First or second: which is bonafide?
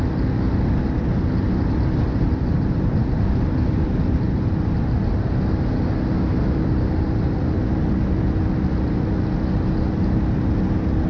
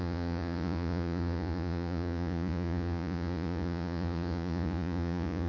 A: first